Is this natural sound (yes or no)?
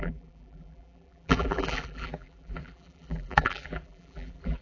no